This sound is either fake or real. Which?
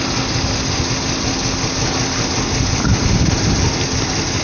real